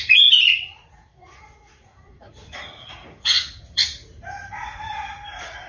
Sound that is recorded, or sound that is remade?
remade